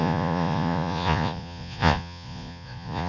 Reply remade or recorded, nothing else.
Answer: remade